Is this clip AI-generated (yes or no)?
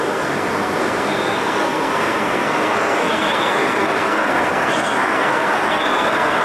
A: yes